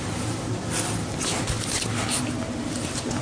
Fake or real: real